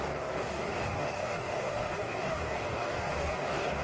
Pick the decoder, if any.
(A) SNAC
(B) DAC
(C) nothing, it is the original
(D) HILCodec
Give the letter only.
B